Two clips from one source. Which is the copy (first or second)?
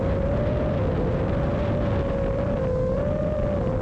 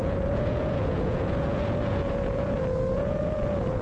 second